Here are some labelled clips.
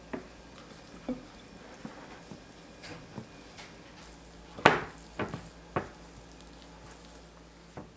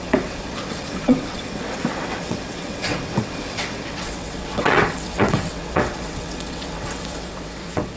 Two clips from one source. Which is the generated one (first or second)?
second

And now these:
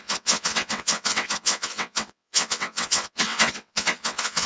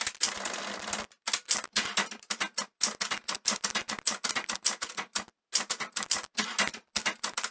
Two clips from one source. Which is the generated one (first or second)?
first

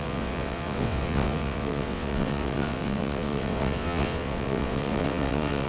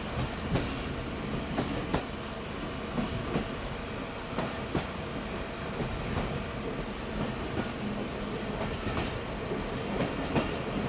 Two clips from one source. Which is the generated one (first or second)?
first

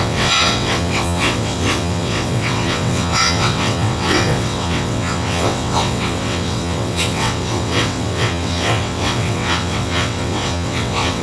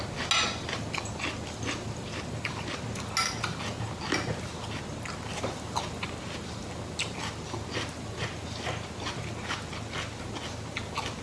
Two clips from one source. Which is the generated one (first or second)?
first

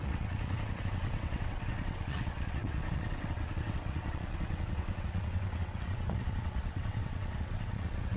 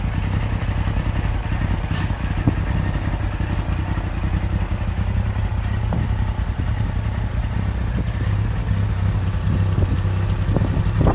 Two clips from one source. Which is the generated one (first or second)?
first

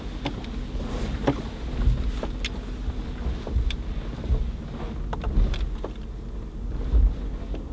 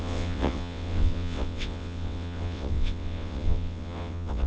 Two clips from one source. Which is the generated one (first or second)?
second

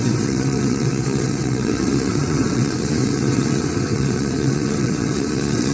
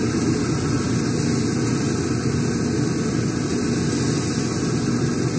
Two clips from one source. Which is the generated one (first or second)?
first